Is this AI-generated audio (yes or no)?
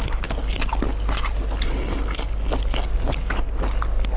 no